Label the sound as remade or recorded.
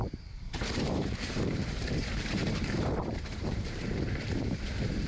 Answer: remade